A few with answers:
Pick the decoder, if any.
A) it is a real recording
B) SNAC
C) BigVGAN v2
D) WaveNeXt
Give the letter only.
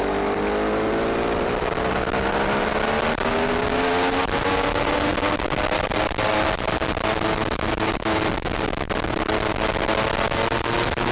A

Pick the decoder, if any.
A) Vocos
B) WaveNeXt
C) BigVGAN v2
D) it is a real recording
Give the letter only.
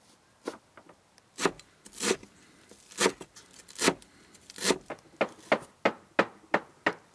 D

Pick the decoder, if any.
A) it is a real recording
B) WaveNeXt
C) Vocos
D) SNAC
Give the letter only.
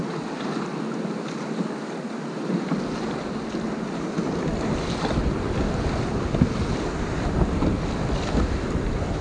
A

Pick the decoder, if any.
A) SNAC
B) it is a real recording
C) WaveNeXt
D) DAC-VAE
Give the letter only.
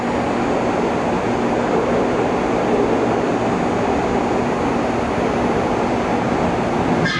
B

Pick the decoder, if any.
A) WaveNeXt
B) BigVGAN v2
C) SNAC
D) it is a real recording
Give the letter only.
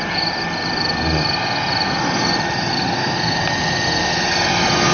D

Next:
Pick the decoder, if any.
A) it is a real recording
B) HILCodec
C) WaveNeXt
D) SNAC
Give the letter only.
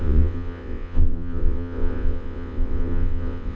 C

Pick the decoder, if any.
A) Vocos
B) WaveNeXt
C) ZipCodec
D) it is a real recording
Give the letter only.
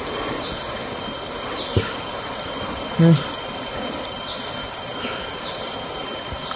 D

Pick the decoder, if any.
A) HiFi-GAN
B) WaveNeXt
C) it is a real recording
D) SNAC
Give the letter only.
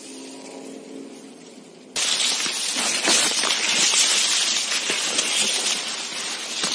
C